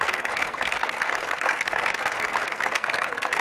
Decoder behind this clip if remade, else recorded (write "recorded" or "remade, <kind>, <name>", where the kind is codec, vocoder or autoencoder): remade, codec, SNAC